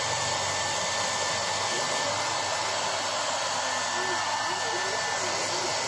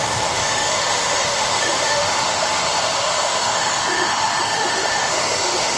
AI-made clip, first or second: second